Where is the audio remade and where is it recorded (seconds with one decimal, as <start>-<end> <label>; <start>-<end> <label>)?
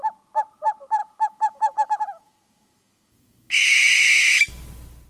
0.0-1.0 recorded; 1.0-4.1 remade; 4.1-5.1 recorded